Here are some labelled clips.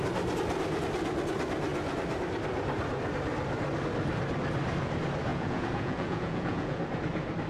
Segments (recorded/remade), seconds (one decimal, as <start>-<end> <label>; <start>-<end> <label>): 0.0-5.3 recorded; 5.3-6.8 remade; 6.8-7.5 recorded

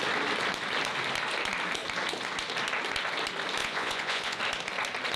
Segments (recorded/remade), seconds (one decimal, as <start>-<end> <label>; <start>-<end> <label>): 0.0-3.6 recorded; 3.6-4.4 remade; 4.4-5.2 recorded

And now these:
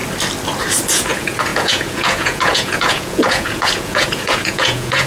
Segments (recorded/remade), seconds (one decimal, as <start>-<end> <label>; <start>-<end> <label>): 0.0-0.9 recorded; 0.9-5.1 remade

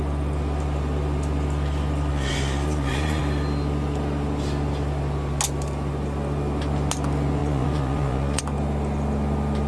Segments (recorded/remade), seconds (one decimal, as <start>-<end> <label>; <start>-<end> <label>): 0.0-2.1 recorded; 2.1-3.2 remade; 3.2-7.4 recorded; 7.4-8.4 remade; 8.4-9.7 recorded

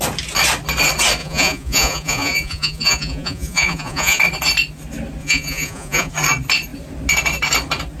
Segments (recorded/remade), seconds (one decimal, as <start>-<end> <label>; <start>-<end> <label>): 0.0-1.2 recorded; 1.2-4.2 remade; 4.2-5.2 recorded; 5.2-6.1 remade; 6.1-8.0 recorded

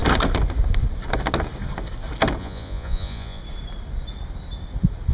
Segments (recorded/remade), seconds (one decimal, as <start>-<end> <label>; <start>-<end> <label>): 0.0-2.4 recorded; 2.4-3.4 remade; 3.4-5.1 recorded